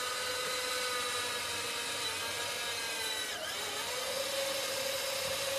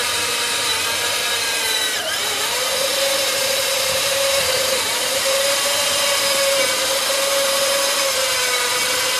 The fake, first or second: second